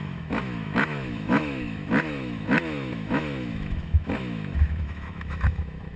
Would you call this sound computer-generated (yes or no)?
yes